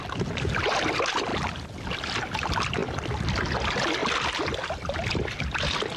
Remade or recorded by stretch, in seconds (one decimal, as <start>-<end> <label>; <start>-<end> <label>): 0.0-1.3 recorded; 1.3-1.9 remade; 1.9-2.8 recorded; 2.8-3.3 remade; 3.3-6.0 recorded